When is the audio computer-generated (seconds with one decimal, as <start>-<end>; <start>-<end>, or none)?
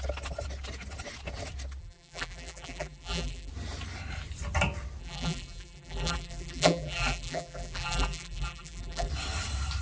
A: 1.8-3.5; 5.0-9.1